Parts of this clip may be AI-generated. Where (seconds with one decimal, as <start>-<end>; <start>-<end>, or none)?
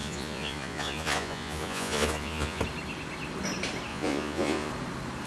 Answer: 0.0-2.6; 3.9-4.7